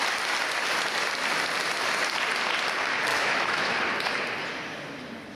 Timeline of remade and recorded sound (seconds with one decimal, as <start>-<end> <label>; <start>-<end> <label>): 0.0-3.1 recorded; 3.1-3.8 remade; 3.8-5.3 recorded